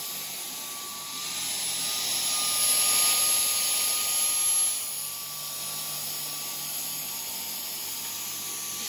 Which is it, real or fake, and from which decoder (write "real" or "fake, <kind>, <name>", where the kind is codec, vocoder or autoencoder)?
real